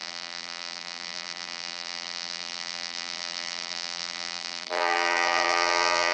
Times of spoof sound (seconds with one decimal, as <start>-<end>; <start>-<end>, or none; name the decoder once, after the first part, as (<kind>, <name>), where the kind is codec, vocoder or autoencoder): 0.0-6.1 (vocoder, BigVGAN v2)